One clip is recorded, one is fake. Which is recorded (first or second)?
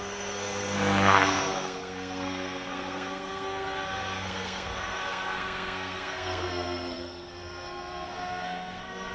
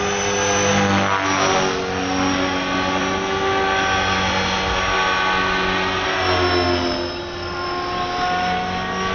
second